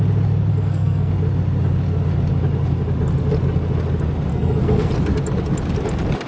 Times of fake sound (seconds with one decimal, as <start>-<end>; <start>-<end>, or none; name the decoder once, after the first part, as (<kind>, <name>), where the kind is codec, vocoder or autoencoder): 0.5-1.1 (codec, SNAC); 4.3-4.9